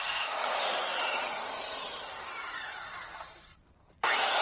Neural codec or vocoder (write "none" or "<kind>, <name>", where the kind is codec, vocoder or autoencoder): vocoder, BigVGAN v2